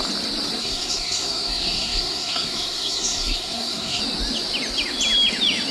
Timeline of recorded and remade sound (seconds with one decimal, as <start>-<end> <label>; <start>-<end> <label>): 0.0-0.6 recorded; 0.6-4.0 remade; 4.0-5.7 recorded